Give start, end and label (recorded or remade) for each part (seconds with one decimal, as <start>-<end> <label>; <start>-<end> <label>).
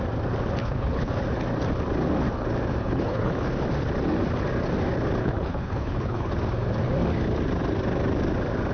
0.0-0.6 recorded; 0.6-1.1 remade; 1.1-2.8 recorded; 2.8-3.5 remade; 3.5-5.2 recorded; 5.2-6.3 remade; 6.3-8.7 recorded